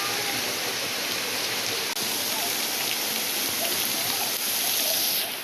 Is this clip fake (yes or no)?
no